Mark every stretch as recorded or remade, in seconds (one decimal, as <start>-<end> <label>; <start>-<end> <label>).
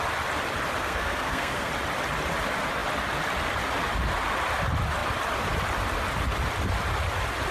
0.0-0.8 recorded; 0.8-1.7 remade; 1.7-7.5 recorded